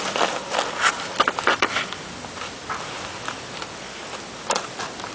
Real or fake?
real